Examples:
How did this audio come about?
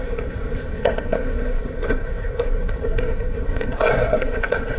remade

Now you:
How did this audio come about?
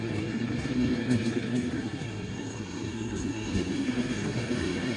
remade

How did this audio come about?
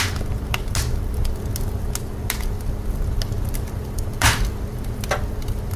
recorded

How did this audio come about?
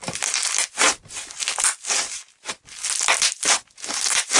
recorded